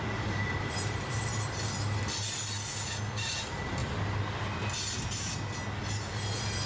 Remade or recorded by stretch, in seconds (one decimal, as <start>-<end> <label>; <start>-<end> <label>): 0.0-1.3 remade; 1.3-3.2 recorded; 3.2-3.8 remade; 3.8-6.7 recorded